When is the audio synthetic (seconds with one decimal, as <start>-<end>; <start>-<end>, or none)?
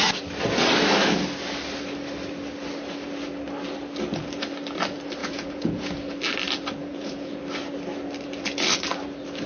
5.2-5.9; 6.8-7.4